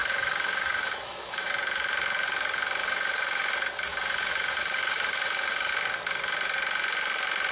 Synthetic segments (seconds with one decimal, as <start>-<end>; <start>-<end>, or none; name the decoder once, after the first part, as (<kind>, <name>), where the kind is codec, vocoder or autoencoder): 0.0-1.5 (autoencoder, DAC-VAE); 2.8-3.5; 3.9-5.7